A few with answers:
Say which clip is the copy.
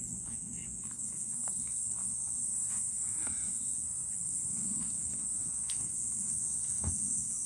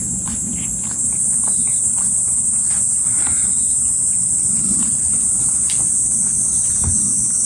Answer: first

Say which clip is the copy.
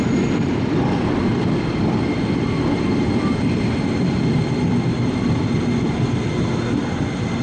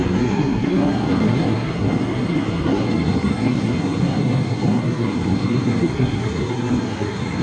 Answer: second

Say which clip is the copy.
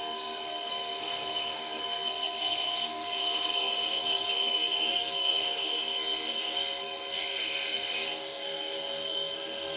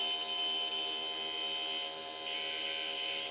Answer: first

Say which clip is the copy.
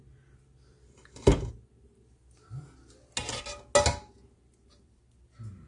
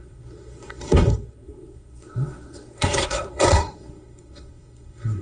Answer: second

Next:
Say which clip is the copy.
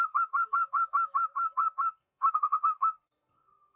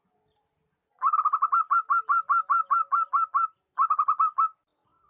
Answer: first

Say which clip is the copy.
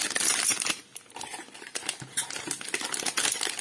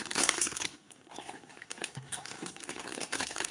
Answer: second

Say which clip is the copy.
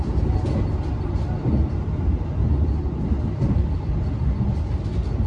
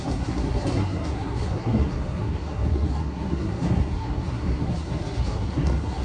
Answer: second